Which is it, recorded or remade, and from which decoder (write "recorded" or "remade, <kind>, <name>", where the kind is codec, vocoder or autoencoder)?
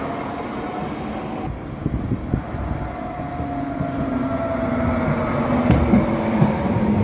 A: recorded